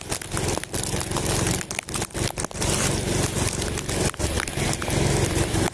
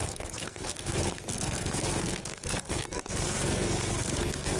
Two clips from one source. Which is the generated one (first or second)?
second